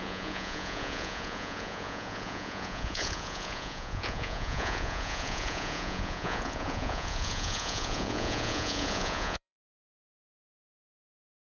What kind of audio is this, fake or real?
fake